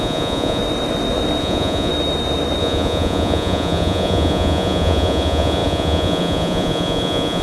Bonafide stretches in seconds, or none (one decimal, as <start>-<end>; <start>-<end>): 0.6-1.4; 1.9-2.6